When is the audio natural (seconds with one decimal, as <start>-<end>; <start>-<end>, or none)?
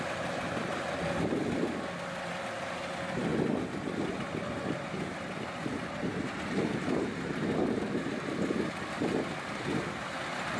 0.0-10.6